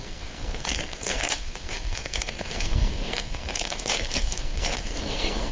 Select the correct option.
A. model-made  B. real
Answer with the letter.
A